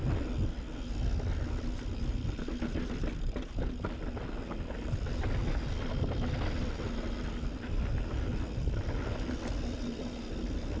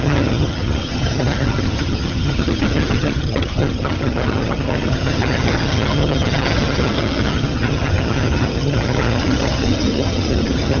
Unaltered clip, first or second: first